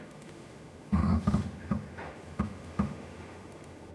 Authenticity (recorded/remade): remade